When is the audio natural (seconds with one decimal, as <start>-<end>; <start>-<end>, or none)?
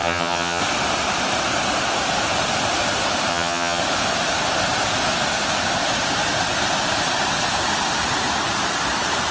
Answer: 0.6-3.3; 3.8-9.3